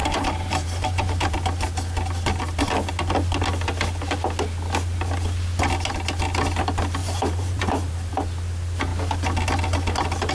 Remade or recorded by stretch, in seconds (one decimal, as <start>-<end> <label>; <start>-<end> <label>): 0.0-1.3 remade; 1.3-7.0 recorded; 7.0-8.1 remade; 8.1-10.3 recorded